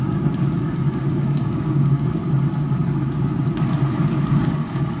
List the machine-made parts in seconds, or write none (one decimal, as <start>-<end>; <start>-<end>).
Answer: 0.0-2.2; 4.3-5.0